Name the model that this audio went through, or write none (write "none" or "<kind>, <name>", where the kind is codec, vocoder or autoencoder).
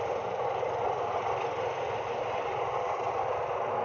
none